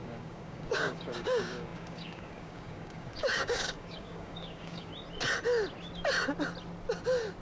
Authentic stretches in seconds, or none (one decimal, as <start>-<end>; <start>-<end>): 4.9-7.4